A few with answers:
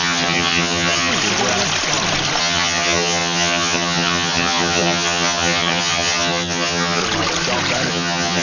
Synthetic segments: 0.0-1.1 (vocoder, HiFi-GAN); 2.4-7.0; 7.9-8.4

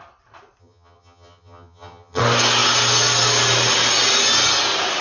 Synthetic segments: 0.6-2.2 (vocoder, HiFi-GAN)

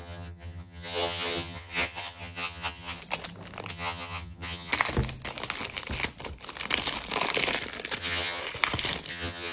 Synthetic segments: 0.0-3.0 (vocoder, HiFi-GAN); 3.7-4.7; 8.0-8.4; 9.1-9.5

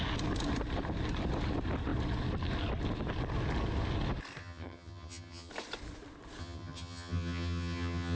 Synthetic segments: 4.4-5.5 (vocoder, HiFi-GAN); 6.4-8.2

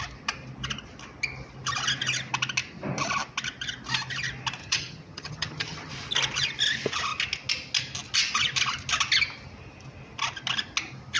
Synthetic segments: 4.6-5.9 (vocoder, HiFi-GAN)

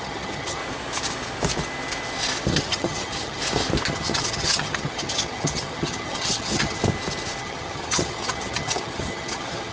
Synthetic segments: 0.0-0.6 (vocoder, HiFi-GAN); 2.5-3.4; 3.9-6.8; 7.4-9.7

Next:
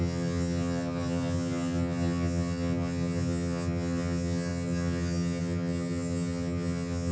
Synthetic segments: 0.0-7.1 (vocoder, HiFi-GAN)

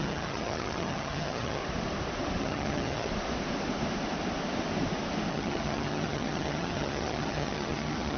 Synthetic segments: 0.0-1.6 (vocoder, HiFi-GAN); 2.4-3.1; 5.3-8.2